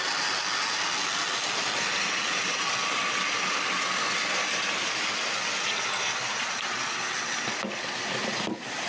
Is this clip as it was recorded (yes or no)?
yes